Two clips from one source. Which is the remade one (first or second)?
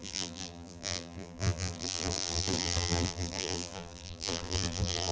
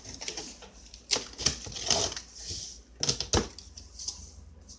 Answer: first